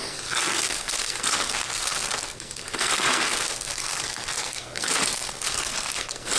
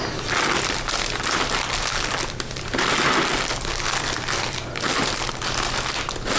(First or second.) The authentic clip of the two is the second